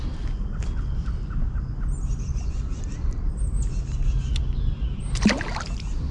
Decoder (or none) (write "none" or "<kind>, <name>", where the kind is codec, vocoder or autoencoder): none